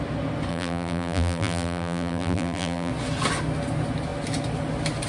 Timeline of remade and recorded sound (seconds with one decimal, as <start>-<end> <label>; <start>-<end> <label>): 0.0-0.5 recorded; 0.5-2.9 remade; 2.9-5.1 recorded